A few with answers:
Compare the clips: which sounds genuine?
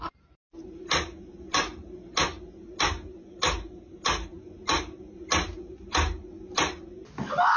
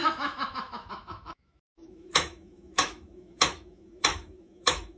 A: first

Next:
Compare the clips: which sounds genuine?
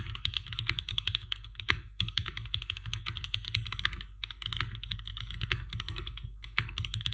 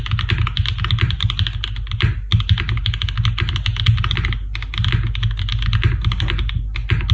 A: second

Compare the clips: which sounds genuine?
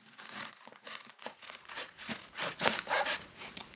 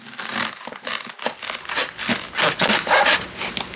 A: second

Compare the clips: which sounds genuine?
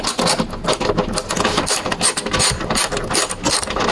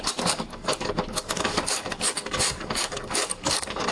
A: first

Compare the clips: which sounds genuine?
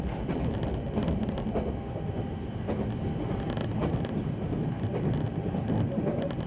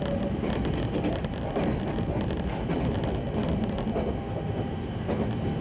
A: second